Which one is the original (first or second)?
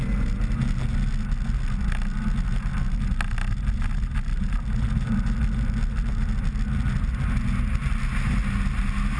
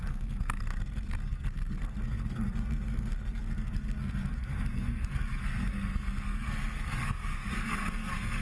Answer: first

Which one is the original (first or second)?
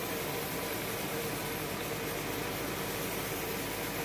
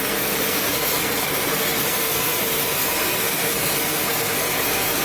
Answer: first